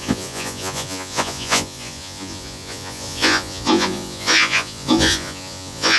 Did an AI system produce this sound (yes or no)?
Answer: yes